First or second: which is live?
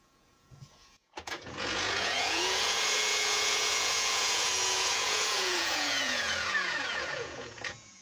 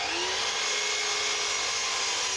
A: second